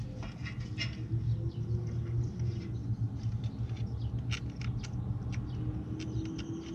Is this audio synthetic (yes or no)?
no